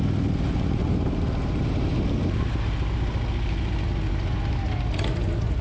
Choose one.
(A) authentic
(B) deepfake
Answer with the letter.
A